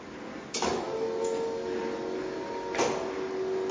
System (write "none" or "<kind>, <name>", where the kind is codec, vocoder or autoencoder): none